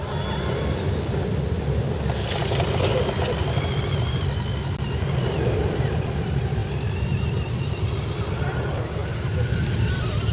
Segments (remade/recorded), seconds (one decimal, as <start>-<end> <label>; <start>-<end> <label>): 0.0-10.3 recorded